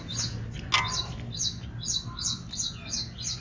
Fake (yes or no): no